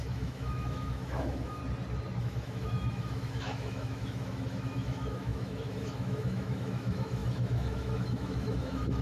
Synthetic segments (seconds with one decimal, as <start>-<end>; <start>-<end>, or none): 0.0-1.6; 2.2-9.0